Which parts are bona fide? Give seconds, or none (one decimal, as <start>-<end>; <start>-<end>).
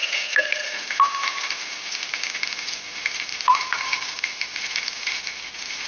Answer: 0.0-5.9